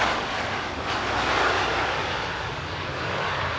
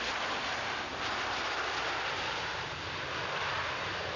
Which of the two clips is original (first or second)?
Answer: second